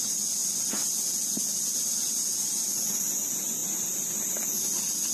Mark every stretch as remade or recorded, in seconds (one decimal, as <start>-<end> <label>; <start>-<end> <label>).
0.0-5.1 recorded

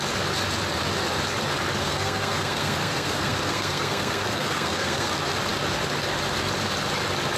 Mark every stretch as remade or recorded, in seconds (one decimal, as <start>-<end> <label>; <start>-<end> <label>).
0.0-1.8 recorded; 1.8-5.1 remade; 5.1-7.4 recorded

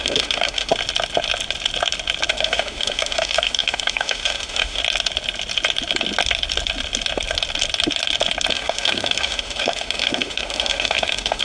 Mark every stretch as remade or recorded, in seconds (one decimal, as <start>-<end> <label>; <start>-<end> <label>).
0.0-0.7 remade; 0.7-2.3 recorded; 2.3-4.8 remade; 4.8-8.5 recorded; 8.5-11.4 remade

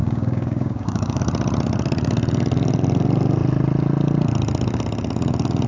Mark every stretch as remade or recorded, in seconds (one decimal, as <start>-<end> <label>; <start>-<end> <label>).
0.0-1.2 remade; 1.2-5.7 recorded